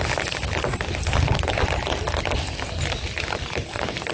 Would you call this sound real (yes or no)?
yes